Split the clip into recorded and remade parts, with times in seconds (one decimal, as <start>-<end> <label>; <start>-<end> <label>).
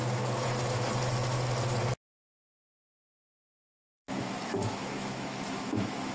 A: 0.0-2.7 recorded; 2.7-6.1 remade